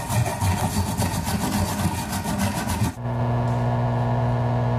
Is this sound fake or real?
real